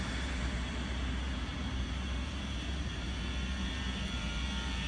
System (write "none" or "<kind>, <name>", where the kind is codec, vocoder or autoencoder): vocoder, BigVGAN v2